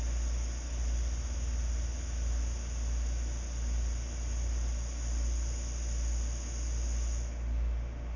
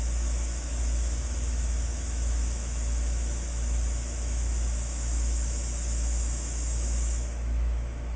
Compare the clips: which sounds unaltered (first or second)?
first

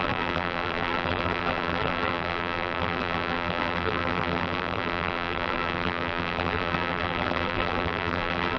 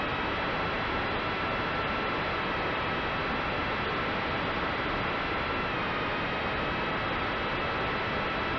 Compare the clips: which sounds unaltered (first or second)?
second